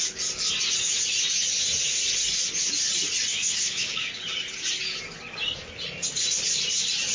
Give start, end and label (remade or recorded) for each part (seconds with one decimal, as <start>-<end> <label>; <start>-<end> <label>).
0.0-3.4 recorded; 3.4-4.2 remade; 4.2-7.1 recorded

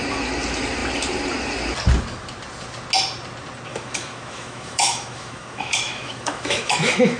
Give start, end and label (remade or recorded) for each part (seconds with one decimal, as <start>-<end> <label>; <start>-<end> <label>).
0.0-3.7 recorded; 3.7-7.2 remade